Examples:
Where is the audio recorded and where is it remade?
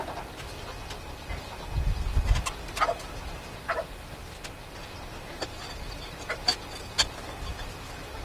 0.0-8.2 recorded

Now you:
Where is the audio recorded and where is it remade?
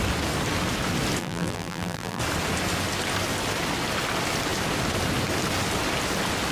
0.0-1.2 recorded; 1.2-2.2 remade; 2.2-6.5 recorded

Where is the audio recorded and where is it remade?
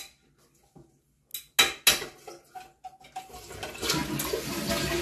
0.0-5.0 recorded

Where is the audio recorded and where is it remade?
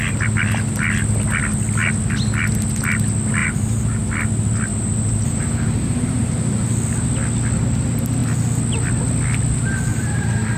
0.0-3.4 recorded; 3.4-4.1 remade; 4.1-4.7 recorded; 4.7-6.3 remade; 6.3-9.9 recorded; 9.9-10.6 remade